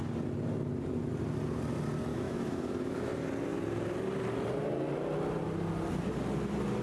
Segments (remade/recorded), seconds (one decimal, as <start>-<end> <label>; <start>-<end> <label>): 0.0-2.1 recorded; 2.1-3.1 remade; 3.1-6.8 recorded